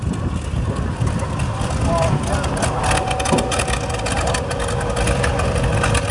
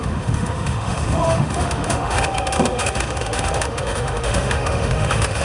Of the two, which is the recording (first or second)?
first